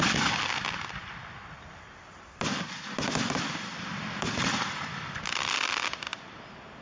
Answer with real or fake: real